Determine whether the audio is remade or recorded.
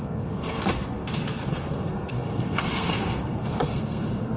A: remade